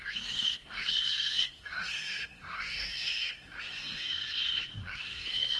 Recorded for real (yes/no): no